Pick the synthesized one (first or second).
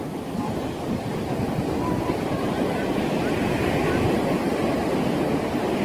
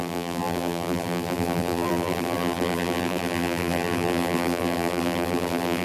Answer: second